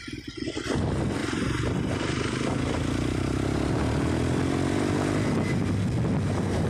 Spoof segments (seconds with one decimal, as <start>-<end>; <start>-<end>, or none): 1.2-3.7